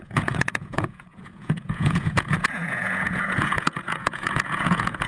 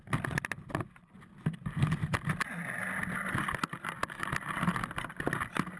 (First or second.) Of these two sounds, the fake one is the first